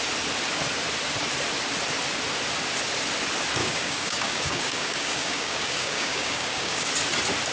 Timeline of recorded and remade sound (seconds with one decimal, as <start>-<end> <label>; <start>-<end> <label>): 0.0-3.6 recorded; 3.6-6.9 remade; 6.9-7.5 recorded